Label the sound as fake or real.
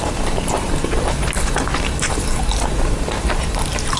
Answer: fake